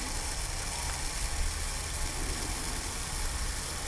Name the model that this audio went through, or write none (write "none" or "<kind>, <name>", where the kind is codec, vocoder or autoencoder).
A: none